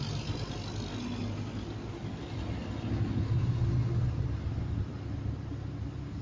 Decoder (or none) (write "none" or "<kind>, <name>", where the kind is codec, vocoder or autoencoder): none